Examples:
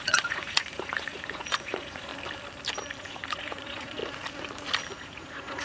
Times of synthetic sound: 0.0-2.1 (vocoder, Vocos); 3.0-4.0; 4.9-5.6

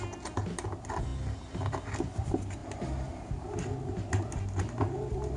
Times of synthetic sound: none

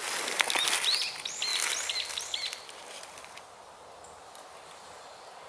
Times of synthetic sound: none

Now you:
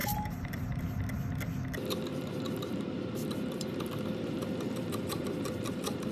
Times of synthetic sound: 0.0-0.8 (vocoder, BigVGAN v2); 2.1-6.1

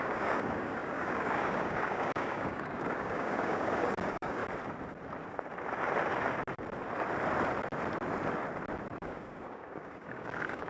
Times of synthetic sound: 0.0-4.4 (codec, DAC); 8.9-10.7